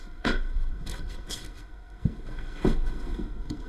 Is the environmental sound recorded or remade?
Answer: remade